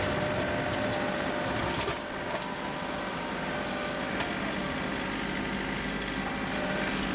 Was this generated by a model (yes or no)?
no